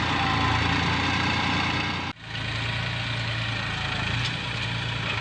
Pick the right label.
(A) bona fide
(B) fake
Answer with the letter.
A